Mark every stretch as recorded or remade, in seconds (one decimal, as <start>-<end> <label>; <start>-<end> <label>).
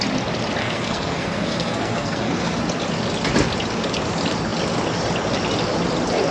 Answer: 0.0-0.6 recorded; 0.6-2.6 remade; 2.6-6.3 recorded